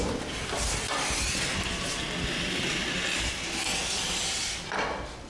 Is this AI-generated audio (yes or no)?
no